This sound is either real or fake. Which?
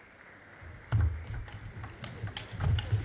real